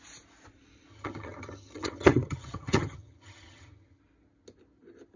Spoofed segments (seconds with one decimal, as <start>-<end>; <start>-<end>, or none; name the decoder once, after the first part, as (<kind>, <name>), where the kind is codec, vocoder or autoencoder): 0.9-4.0 (vocoder, HiFi-GAN)